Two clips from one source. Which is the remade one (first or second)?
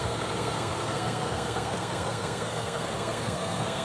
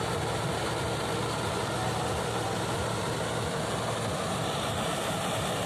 first